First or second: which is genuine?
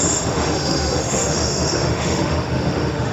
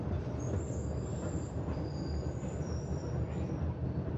second